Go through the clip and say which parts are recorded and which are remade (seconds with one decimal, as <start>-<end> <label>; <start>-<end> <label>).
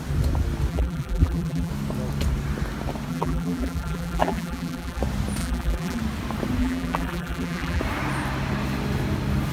0.0-0.7 recorded; 0.7-1.7 remade; 1.7-3.1 recorded; 3.1-5.0 remade; 5.0-5.4 recorded; 5.4-6.0 remade; 6.0-6.6 recorded; 6.6-7.8 remade; 7.8-9.5 recorded